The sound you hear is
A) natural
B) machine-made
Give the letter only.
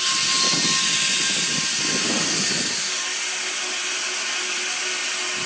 A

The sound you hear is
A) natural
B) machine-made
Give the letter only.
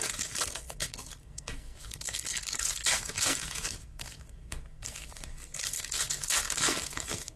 B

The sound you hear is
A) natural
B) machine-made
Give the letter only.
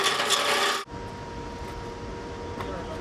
A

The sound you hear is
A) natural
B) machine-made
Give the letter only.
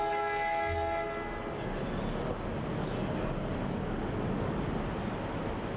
A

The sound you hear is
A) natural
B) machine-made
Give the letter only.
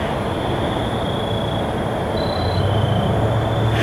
A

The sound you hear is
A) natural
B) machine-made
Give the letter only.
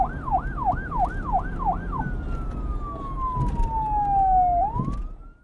A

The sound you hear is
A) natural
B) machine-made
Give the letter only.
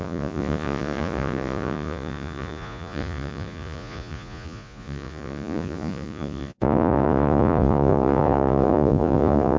B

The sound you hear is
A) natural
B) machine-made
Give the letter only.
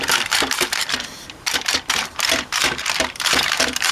B